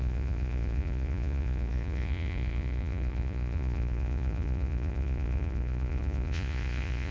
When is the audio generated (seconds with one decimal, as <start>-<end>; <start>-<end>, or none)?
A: 0.0-7.1